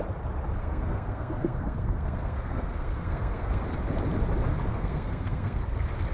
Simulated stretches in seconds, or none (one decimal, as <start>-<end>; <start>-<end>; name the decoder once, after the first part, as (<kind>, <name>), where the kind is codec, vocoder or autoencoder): 0.6-3.6 (codec, SNAC); 4.7-5.6